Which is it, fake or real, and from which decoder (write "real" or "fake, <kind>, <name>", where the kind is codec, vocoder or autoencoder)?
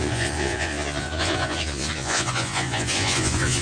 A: fake, vocoder, Vocos